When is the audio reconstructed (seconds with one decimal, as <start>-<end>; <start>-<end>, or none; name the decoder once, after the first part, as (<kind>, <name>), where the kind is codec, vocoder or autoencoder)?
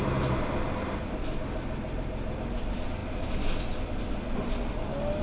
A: none